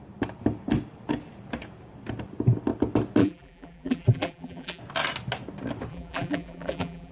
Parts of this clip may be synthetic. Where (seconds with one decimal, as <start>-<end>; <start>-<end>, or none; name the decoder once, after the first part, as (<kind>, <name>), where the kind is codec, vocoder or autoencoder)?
3.2-4.8 (vocoder, BigVGAN v2); 5.9-7.1